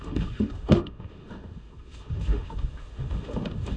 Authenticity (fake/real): fake